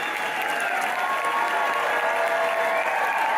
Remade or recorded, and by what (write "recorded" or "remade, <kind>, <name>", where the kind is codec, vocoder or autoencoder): recorded